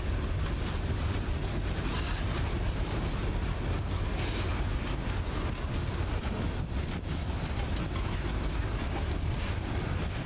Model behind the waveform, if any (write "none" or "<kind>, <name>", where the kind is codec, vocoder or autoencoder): none